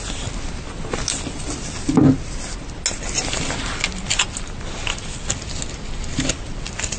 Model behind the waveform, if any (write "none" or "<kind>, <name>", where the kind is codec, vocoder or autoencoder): none